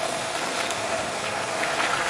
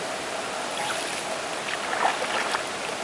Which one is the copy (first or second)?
first